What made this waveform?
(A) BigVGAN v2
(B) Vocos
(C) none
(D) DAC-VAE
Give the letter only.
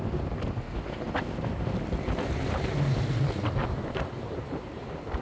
C